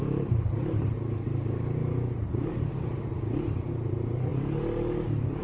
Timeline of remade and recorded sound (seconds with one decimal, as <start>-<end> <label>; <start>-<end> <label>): 0.0-1.8 remade; 1.8-2.3 recorded; 2.3-2.7 remade; 2.7-3.7 recorded; 3.7-4.3 remade; 4.3-5.4 recorded